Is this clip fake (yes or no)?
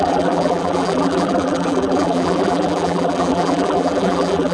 yes